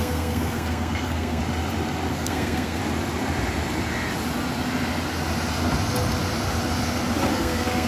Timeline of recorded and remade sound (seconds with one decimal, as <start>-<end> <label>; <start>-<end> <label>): 0.0-1.4 remade; 1.4-2.1 recorded; 2.1-2.8 remade; 2.8-7.3 recorded; 7.3-7.9 remade